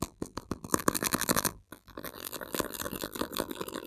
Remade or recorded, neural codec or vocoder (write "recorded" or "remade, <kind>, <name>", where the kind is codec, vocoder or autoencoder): remade, vocoder, BigVGAN v2